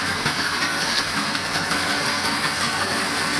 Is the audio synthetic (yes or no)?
yes